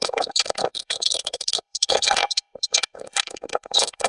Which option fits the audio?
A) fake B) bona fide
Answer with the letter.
A